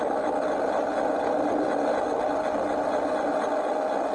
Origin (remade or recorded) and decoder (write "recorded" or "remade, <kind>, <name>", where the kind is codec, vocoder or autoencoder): recorded